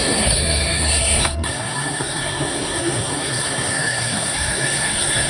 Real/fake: fake